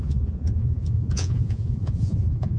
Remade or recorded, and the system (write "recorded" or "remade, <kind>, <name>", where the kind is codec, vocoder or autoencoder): remade, vocoder, Vocos